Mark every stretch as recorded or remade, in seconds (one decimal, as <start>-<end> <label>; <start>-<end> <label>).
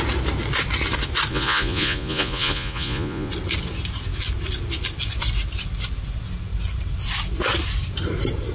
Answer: 0.0-1.3 recorded; 1.3-3.3 remade; 3.3-8.5 recorded